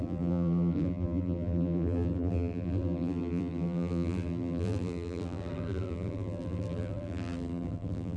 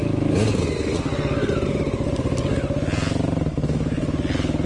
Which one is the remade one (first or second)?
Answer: first